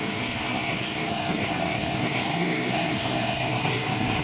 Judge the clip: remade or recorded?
remade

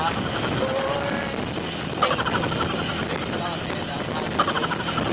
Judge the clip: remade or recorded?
recorded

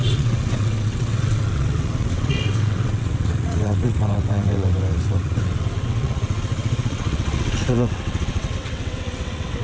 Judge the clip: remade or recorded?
remade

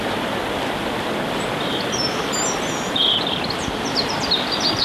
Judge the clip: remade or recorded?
recorded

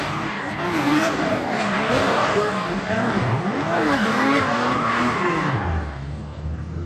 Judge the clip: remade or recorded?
remade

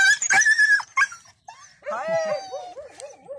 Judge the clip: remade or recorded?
recorded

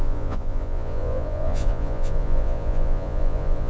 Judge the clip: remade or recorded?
remade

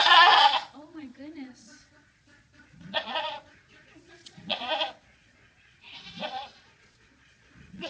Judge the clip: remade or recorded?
remade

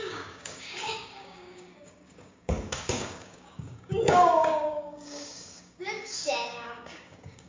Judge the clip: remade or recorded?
remade